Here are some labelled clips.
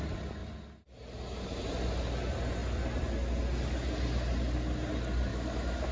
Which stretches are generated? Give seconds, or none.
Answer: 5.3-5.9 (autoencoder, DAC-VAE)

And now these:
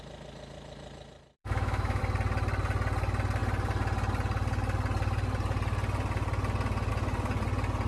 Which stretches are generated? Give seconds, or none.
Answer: 1.4-2.0 (autoencoder, DAC-VAE)

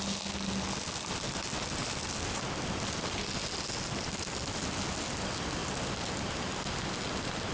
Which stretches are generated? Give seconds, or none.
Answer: none

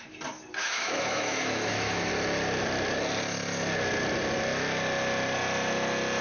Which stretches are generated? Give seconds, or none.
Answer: 0.6-2.1 (autoencoder, DAC-VAE)